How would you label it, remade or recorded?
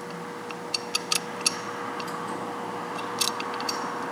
recorded